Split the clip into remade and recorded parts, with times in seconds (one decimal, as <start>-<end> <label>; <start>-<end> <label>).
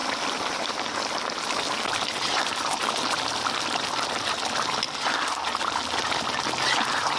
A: 0.0-7.2 recorded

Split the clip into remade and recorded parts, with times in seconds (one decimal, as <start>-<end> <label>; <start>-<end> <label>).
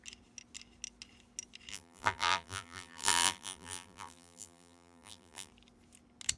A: 0.0-1.7 recorded; 1.7-5.5 remade; 5.5-6.4 recorded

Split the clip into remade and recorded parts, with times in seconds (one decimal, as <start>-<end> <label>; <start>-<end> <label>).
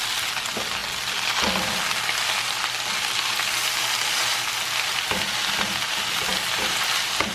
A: 0.0-7.3 recorded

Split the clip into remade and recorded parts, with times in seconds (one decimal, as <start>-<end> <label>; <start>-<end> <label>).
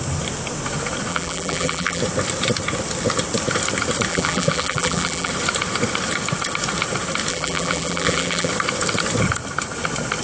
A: 0.0-1.1 recorded; 1.1-2.0 remade; 2.0-4.1 recorded; 4.1-5.3 remade; 5.3-7.3 recorded; 7.3-8.5 remade; 8.5-10.2 recorded